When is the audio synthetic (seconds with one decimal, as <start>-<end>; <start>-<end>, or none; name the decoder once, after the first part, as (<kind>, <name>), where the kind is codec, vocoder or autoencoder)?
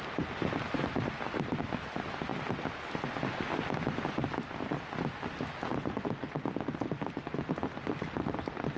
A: 5.7-8.8 (vocoder, BigVGAN v2)